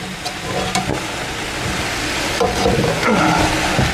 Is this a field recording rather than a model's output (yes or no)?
yes